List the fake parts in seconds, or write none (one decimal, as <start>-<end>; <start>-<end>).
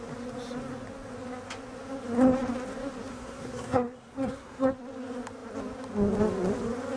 3.1-4.7